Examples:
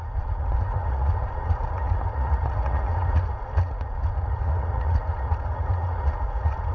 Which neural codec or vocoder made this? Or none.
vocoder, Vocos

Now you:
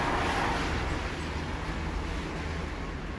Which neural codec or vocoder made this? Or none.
none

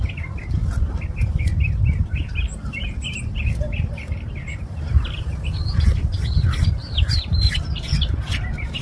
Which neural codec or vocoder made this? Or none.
vocoder, BigVGAN v2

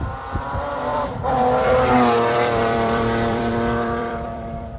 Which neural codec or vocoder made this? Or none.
vocoder, BigVGAN v2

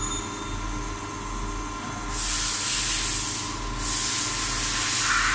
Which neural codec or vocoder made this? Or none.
none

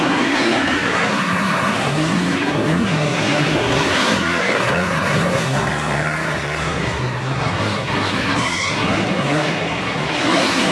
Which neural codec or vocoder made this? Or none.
codec, SNAC